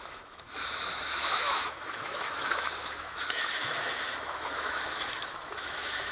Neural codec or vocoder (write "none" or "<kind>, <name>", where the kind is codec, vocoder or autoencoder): autoencoder, DAC-VAE